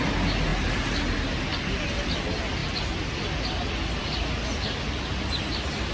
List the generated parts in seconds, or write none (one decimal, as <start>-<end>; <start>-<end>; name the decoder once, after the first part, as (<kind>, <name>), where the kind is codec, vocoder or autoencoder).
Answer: none